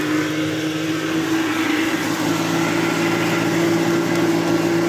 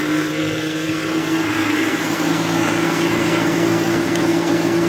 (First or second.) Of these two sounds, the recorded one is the first